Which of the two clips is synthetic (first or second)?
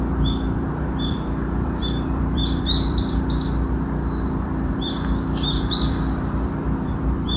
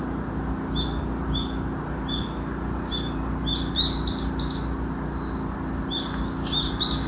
first